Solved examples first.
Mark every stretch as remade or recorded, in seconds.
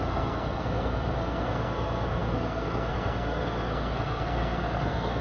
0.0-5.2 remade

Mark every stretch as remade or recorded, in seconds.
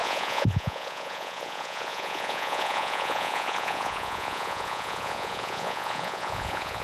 0.0-6.8 remade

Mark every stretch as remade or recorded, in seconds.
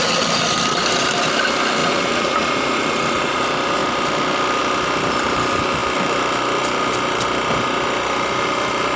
0.0-1.8 recorded; 1.8-3.4 remade; 3.4-9.0 recorded